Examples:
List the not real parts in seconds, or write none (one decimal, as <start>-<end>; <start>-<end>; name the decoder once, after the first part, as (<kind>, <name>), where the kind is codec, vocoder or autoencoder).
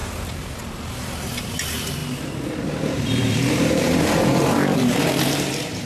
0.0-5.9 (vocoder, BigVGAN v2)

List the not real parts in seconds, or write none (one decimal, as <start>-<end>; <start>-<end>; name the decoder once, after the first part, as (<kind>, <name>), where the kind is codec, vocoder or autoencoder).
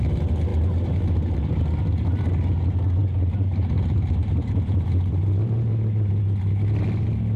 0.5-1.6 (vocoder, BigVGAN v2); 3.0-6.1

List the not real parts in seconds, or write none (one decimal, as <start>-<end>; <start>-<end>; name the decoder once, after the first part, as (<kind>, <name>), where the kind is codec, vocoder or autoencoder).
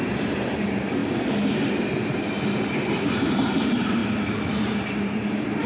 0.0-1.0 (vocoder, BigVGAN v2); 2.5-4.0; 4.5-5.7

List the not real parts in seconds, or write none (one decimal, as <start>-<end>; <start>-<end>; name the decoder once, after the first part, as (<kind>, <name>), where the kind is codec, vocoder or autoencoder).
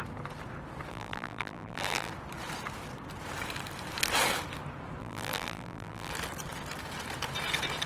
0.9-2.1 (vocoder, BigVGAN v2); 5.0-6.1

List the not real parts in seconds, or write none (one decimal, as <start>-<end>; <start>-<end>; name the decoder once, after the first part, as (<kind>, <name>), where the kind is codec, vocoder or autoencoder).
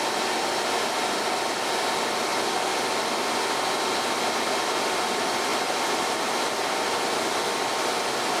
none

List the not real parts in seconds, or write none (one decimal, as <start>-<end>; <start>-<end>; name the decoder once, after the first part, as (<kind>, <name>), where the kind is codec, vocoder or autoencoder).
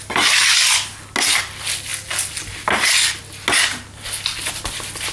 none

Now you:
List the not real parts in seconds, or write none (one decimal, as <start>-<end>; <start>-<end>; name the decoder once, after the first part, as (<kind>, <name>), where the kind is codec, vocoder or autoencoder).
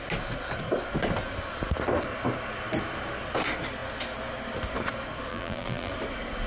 5.3-5.9 (vocoder, BigVGAN v2)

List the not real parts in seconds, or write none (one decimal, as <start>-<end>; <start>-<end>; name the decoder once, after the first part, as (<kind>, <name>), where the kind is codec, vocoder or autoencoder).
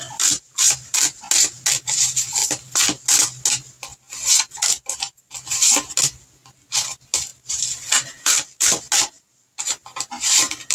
7.3-8.8 (vocoder, BigVGAN v2)